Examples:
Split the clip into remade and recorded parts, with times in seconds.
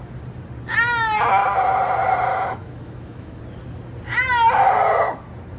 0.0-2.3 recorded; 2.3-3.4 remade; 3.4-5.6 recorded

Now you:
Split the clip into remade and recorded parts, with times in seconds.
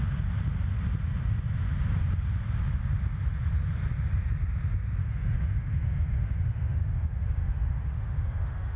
0.0-5.0 recorded; 5.0-8.8 remade